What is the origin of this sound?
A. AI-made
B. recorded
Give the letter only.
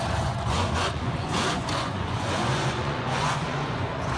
A